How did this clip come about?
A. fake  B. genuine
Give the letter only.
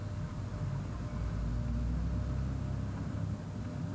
B